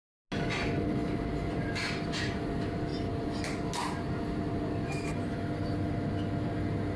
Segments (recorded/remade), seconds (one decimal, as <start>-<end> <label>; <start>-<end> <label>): 0.0-7.0 recorded